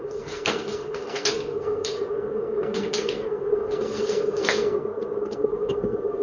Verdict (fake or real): fake